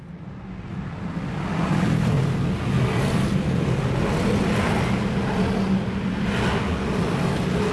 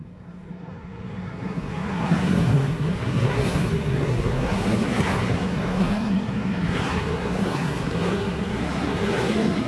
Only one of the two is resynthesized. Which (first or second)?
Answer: second